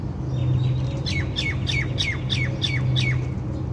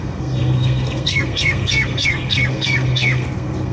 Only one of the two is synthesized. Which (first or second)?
second